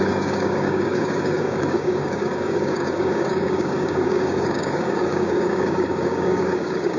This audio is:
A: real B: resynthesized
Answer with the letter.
B